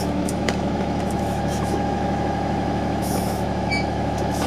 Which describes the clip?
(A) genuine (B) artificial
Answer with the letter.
B